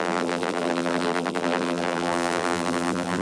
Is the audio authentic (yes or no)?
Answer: no